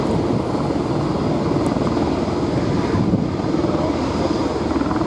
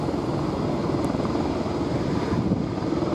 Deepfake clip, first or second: second